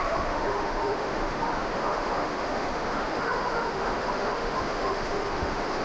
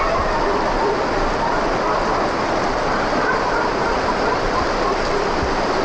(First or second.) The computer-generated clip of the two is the first